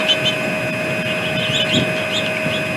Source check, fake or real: real